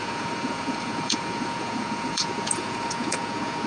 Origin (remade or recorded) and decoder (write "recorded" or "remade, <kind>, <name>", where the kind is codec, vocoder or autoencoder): remade, vocoder, Vocos